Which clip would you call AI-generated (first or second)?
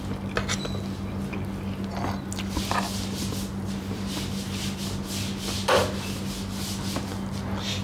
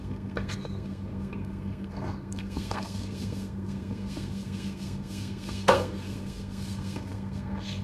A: second